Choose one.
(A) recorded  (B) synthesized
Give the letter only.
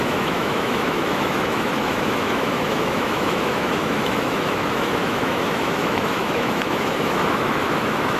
B